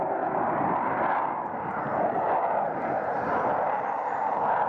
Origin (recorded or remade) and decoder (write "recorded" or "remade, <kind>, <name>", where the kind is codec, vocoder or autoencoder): recorded